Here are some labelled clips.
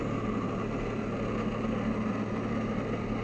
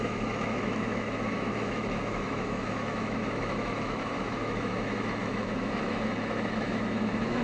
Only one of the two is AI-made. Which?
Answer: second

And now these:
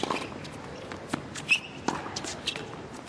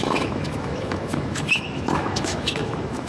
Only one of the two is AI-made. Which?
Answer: second